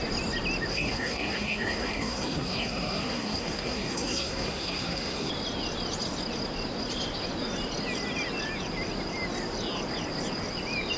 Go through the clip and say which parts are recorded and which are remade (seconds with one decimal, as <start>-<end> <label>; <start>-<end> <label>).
0.0-0.7 recorded; 0.7-5.3 remade; 5.3-11.0 recorded